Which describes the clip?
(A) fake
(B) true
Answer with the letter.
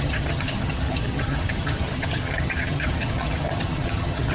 A